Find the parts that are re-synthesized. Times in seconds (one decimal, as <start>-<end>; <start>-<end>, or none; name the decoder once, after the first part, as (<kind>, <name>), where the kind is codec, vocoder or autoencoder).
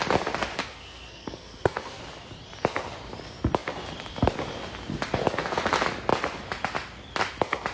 0.6-2.0 (codec, SNAC)